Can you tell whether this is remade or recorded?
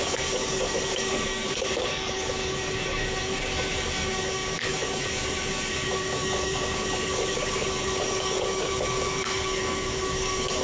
remade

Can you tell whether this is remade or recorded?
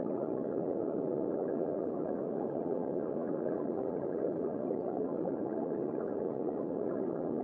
remade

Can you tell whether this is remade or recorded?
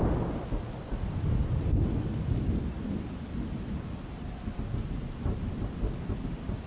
recorded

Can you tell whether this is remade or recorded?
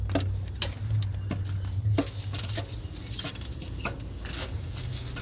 recorded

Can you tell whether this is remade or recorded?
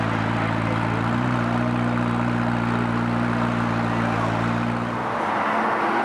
recorded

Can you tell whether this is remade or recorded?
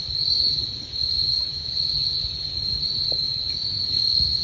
recorded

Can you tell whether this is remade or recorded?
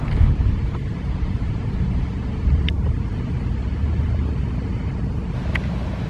recorded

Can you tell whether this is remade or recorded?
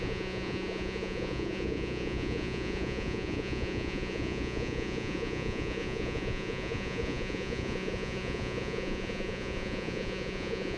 remade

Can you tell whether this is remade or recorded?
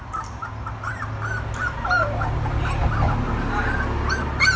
recorded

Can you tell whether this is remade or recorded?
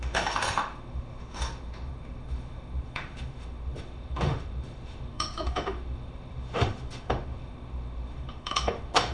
remade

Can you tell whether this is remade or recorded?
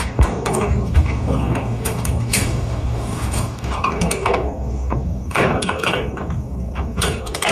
remade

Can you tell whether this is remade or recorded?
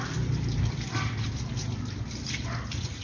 recorded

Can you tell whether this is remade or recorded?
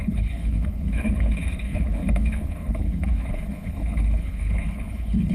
remade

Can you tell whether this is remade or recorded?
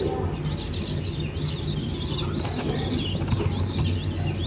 recorded